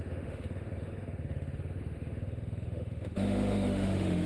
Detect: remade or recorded remade